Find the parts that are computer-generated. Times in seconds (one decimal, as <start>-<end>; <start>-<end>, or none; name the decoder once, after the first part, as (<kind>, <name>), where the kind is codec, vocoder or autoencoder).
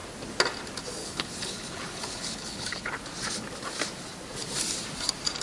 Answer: 1.0-2.9 (codec, HILCodec)